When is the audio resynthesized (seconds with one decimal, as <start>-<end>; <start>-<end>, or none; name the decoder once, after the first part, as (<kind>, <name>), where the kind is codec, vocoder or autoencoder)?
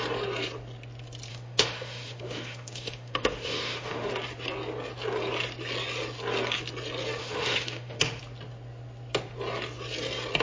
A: 1.3-4.1 (autoencoder, DAC-VAE); 7.2-8.2